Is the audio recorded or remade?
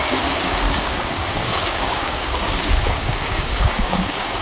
remade